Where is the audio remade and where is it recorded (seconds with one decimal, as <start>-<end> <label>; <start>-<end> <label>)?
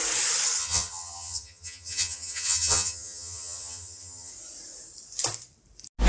0.0-0.6 recorded; 0.6-4.3 remade; 4.3-6.1 recorded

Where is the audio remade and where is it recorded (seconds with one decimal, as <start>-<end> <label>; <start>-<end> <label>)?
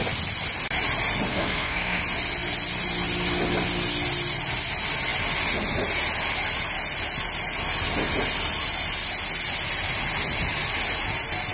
0.0-1.3 recorded; 1.3-2.0 remade; 2.0-11.5 recorded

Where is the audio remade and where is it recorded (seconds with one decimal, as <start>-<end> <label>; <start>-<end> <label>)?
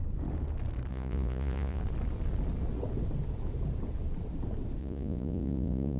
0.0-0.9 recorded; 0.9-1.8 remade; 1.8-4.8 recorded; 4.8-6.0 remade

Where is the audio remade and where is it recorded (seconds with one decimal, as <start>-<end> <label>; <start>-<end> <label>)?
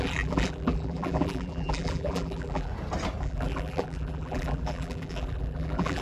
0.0-2.7 remade; 2.7-3.2 recorded; 3.2-6.0 remade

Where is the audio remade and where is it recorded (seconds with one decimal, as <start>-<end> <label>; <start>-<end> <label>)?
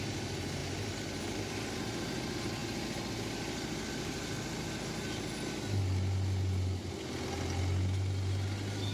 0.0-8.9 recorded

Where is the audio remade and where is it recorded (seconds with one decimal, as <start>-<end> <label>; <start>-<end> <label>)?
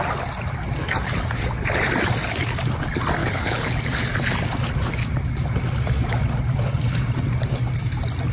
0.0-3.2 recorded; 3.2-3.8 remade; 3.8-8.3 recorded